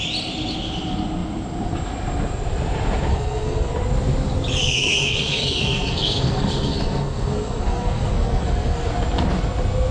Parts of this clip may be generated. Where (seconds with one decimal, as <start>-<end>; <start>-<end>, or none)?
3.1-3.7; 4.6-8.9